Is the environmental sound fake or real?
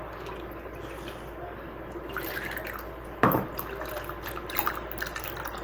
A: real